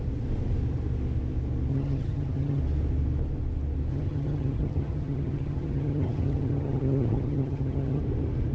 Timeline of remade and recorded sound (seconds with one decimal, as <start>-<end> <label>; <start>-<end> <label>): 0.0-1.7 recorded; 1.7-2.6 remade; 2.6-3.9 recorded; 3.9-8.0 remade; 8.0-8.5 recorded